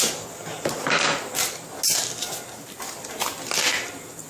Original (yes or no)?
yes